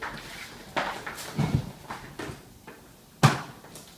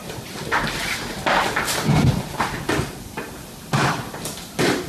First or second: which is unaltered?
first